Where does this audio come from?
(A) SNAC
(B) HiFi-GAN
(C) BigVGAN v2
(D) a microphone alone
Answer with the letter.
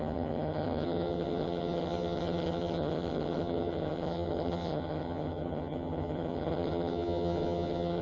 B